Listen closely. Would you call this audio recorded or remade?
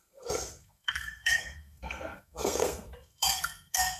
remade